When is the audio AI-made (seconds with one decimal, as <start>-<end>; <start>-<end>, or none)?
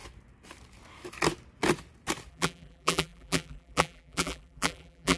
2.3-5.2